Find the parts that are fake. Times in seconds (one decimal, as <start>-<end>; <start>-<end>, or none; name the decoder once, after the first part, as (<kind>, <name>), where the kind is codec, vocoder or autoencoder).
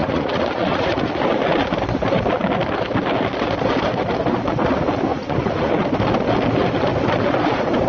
0.0-1.2 (vocoder, Vocos); 5.1-5.7